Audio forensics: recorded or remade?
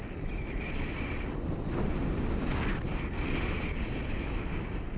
recorded